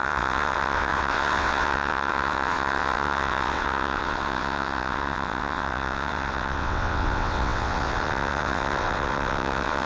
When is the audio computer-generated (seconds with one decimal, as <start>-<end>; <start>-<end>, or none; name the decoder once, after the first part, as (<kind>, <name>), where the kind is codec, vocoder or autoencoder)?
0.0-9.9 (vocoder, WaveNeXt)